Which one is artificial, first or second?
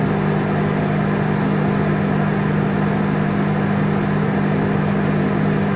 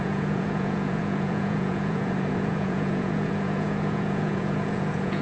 second